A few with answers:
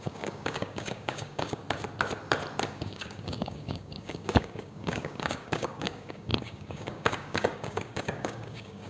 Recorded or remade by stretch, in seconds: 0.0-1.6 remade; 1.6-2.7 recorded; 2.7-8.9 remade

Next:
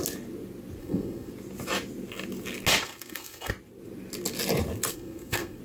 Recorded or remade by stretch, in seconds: 0.0-0.8 recorded; 0.8-1.3 remade; 1.3-2.8 recorded; 2.8-3.5 remade; 3.5-4.9 recorded; 4.9-5.6 remade

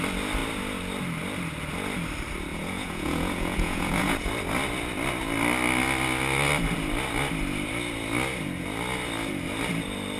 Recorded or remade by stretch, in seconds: 0.0-2.5 recorded; 2.5-4.3 remade; 4.3-10.2 recorded